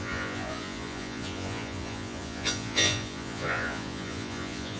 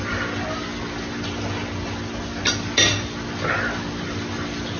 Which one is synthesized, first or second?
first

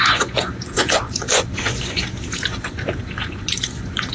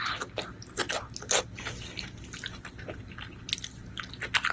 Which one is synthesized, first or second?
first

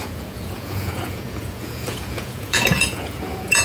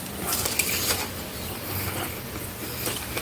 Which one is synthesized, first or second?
first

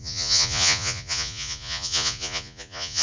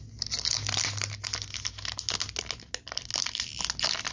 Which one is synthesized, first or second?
first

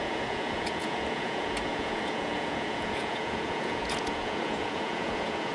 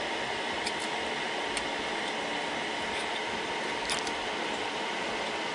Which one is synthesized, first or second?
first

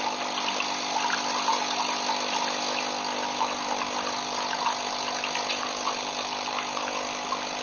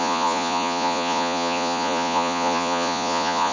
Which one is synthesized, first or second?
second